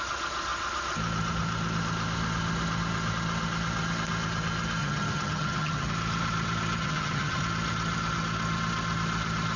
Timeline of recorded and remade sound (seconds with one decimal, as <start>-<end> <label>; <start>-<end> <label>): 0.0-4.8 recorded; 4.8-5.9 remade; 5.9-6.8 recorded; 6.8-7.4 remade; 7.4-9.6 recorded